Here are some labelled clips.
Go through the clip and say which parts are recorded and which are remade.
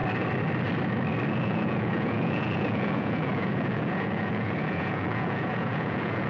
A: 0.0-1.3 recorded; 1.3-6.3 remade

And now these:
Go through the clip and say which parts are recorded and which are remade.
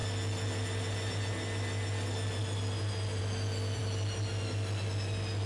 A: 0.0-5.5 recorded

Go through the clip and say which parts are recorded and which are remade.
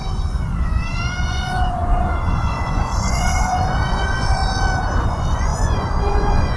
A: 0.0-4.4 remade; 4.4-5.0 recorded; 5.0-6.6 remade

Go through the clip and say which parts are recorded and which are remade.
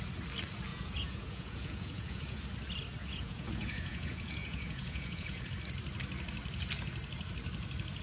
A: 0.0-0.7 recorded; 0.7-2.4 remade; 2.4-3.0 recorded; 3.0-5.5 remade; 5.5-8.0 recorded